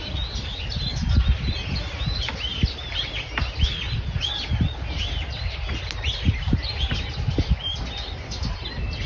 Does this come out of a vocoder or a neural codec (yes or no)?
no